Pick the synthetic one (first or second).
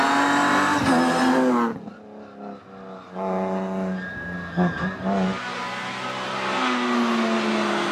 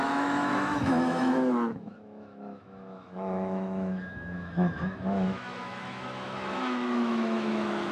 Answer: second